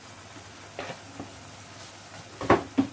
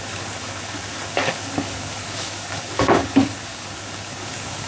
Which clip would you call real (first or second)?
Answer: first